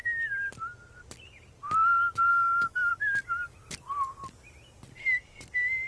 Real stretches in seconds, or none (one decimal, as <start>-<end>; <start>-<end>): 0.0-2.3; 2.9-5.9